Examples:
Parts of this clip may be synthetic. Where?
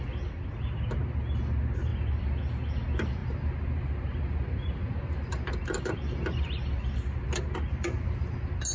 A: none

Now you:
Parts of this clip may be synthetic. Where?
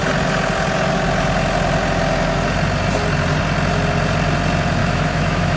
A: 4.8-5.6 (autoencoder, DAC-VAE)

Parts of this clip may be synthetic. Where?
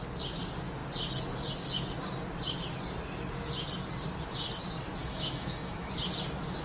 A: 5.0-5.9 (autoencoder, DAC-VAE)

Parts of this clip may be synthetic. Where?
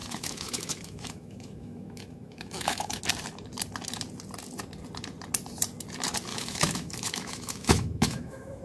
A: 0.0-3.0 (autoencoder, DAC-VAE); 6.3-8.6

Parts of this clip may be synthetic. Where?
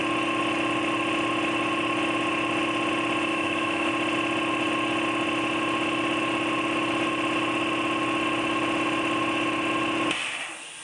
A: 3.3-3.9 (autoencoder, DAC-VAE)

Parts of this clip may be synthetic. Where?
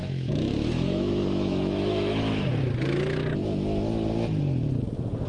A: 0.0-2.5 (autoencoder, DAC-VAE)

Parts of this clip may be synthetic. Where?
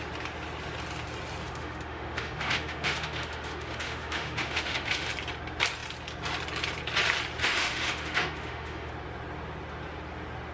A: 1.4-5.1 (autoencoder, DAC-VAE); 7.4-8.9